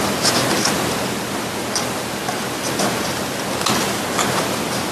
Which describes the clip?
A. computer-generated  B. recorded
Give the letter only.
B